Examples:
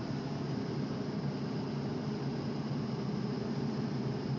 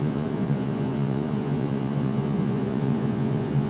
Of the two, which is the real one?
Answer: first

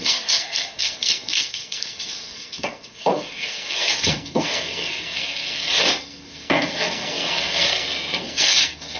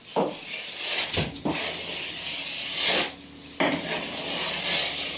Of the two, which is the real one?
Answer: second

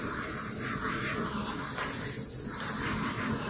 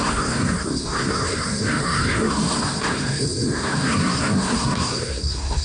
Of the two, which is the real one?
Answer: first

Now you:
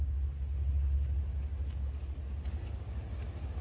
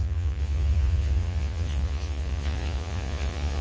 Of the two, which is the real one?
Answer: first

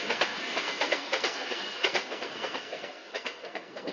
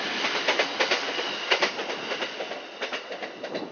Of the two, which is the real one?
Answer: second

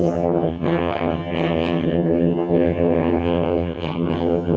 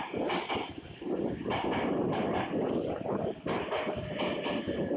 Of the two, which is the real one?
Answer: second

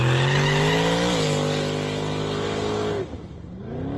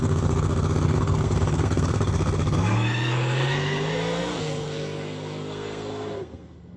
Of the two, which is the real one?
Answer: first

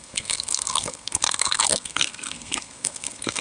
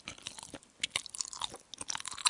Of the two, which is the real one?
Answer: second